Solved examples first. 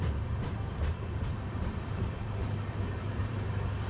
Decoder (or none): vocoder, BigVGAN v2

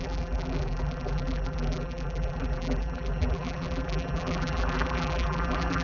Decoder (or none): vocoder, BigVGAN v2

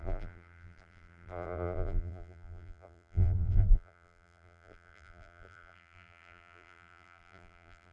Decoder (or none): vocoder, BigVGAN v2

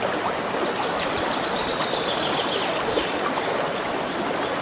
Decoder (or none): none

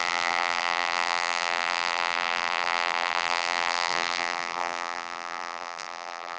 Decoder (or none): vocoder, BigVGAN v2